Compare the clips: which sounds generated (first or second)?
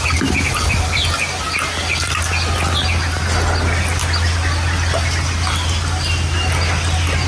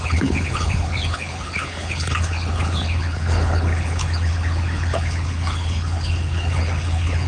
second